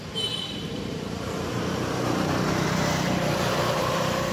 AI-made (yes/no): yes